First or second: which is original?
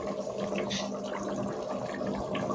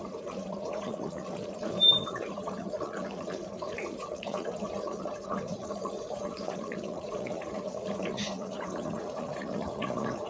first